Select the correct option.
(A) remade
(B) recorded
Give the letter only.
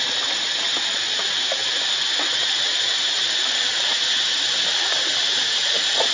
B